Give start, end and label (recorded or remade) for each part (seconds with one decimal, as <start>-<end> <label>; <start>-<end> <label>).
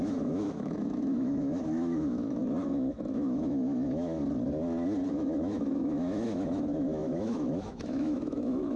0.0-4.2 remade; 4.2-5.1 recorded; 5.1-8.8 remade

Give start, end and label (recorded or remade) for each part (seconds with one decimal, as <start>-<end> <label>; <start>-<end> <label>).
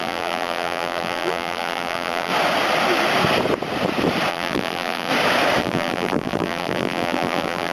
0.0-2.3 remade; 2.3-4.3 recorded; 4.3-5.1 remade; 5.1-5.6 recorded; 5.6-7.7 remade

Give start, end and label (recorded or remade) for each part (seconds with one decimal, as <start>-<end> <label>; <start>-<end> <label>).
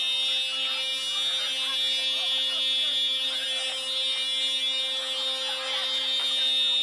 0.0-6.8 recorded